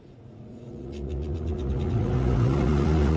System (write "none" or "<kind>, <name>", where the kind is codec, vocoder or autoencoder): vocoder, Vocos